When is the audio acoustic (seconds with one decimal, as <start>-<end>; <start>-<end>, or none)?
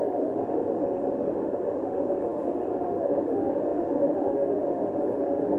none